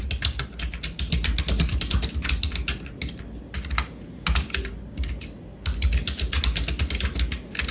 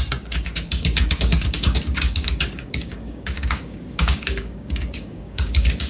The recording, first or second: first